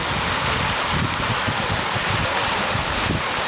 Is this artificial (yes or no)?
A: no